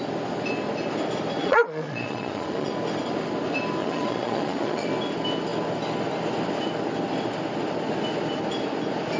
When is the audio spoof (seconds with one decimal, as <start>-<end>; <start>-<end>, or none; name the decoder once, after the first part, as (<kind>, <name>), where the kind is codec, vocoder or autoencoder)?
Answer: 1.4-2.7 (vocoder, Vocos); 3.8-4.9